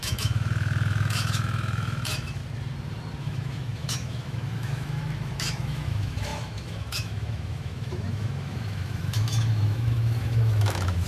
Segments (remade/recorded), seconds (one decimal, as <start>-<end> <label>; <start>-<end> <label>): 0.0-2.4 remade; 2.4-3.2 recorded; 3.2-11.1 remade